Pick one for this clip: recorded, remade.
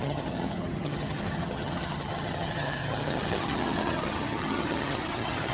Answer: remade